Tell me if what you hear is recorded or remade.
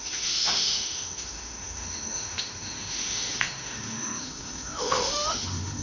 remade